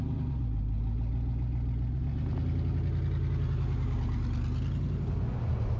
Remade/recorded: recorded